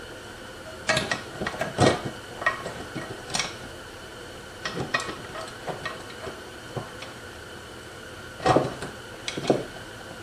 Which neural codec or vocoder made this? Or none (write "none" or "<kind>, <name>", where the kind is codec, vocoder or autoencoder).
vocoder, BigVGAN v2